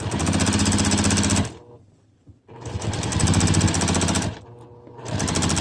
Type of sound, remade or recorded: recorded